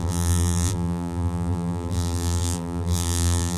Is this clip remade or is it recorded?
remade